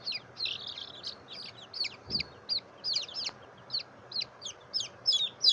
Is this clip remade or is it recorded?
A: recorded